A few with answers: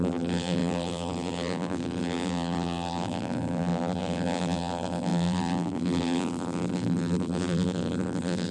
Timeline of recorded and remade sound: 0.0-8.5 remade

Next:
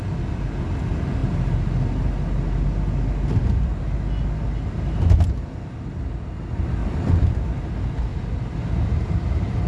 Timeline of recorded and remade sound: 0.0-6.8 recorded; 6.8-7.6 remade; 7.6-8.1 recorded; 8.1-9.7 remade

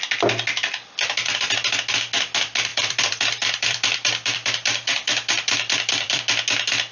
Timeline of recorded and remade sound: 0.0-2.7 recorded; 2.7-6.2 remade; 6.2-6.9 recorded

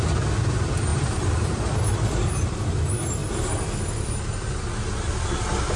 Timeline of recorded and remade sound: 0.0-0.9 recorded; 0.9-2.7 remade; 2.7-3.2 recorded; 3.2-4.5 remade; 4.5-5.8 recorded

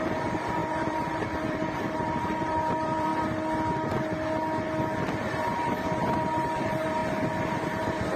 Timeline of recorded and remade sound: 0.0-3.1 remade; 3.1-5.3 recorded; 5.3-7.0 remade; 7.0-7.5 recorded; 7.5-8.2 remade